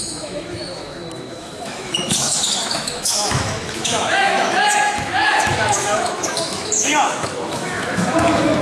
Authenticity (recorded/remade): remade